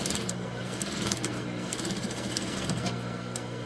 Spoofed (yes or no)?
yes